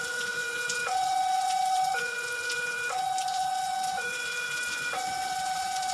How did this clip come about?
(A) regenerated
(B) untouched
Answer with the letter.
A